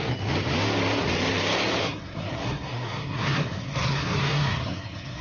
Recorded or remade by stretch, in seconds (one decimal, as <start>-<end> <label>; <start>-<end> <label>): 0.0-1.8 recorded; 1.8-5.2 remade